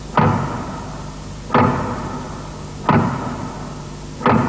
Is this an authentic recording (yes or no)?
yes